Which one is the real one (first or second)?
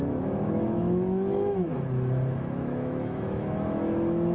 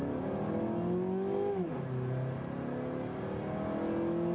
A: second